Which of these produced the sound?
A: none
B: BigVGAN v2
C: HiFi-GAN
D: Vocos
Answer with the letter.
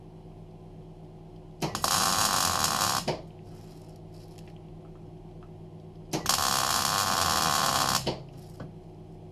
A